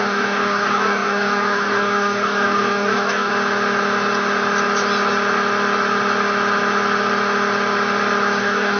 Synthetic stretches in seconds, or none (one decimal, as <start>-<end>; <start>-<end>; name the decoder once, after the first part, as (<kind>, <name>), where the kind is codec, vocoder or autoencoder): 0.0-3.3 (codec, DAC); 8.4-8.8

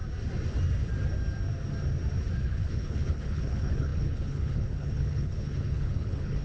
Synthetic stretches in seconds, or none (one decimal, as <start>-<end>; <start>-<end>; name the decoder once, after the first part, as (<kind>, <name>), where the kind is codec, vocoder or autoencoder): 2.4-6.4 (codec, HILCodec)

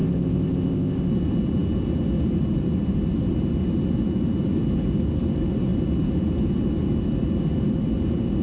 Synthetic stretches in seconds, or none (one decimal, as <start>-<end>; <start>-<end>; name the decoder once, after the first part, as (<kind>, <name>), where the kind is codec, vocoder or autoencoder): 0.0-1.1 (codec, ZipCodec)

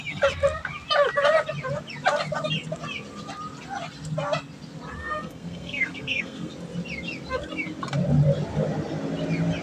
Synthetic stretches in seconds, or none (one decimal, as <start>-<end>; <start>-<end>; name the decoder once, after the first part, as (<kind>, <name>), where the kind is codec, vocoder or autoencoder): 5.0-6.5 (codec, SNAC)

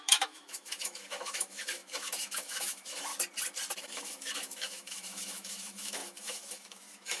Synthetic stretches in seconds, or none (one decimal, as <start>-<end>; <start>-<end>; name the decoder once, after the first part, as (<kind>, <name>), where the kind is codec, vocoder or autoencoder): 0.0-3.1 (autoencoder, DAC-VAE); 3.8-7.2

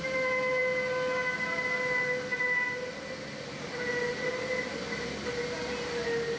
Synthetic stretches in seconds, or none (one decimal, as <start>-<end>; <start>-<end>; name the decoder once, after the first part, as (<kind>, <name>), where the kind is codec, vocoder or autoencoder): none

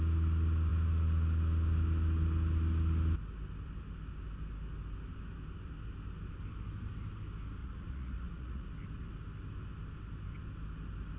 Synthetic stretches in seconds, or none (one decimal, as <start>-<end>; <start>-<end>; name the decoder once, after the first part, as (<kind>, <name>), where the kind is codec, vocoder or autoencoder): 7.6-8.7 (vocoder, Vocos)